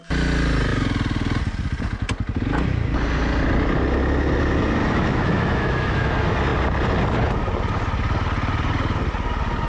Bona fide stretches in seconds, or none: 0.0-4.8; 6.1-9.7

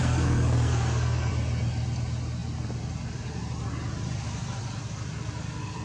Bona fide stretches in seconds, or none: 1.3-5.8